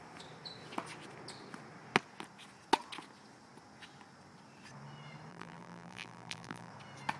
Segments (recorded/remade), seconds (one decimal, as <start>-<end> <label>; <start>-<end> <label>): 0.0-5.3 recorded; 5.3-6.7 remade; 6.7-7.2 recorded